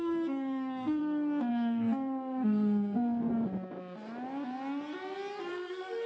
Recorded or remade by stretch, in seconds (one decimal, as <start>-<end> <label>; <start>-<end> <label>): 0.0-1.0 remade; 1.0-1.5 recorded; 1.5-3.3 remade; 3.3-5.5 recorded; 5.5-6.1 remade